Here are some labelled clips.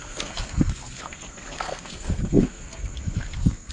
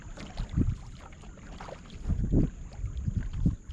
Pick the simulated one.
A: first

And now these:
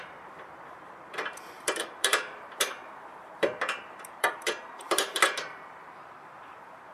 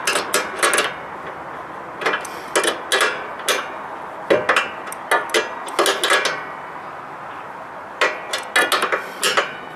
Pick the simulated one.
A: first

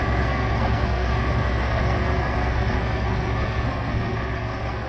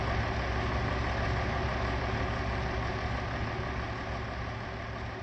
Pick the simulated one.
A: first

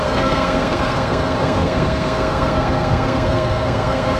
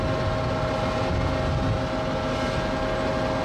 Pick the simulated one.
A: first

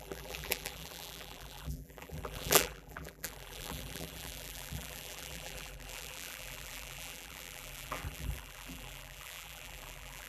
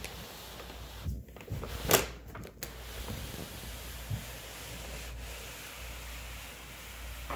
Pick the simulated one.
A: first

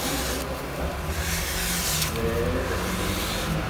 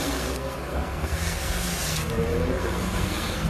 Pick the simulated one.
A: second